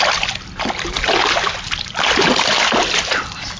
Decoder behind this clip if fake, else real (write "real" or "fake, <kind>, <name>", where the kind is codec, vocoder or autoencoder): real